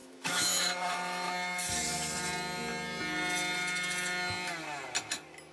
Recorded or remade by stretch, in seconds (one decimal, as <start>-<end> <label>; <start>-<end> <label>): 0.0-0.6 remade; 0.6-5.5 recorded